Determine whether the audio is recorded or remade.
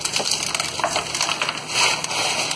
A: recorded